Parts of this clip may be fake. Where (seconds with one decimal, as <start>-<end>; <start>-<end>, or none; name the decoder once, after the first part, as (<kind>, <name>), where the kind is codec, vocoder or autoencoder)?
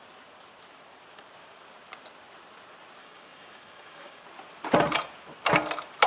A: 3.0-4.2 (codec, DAC)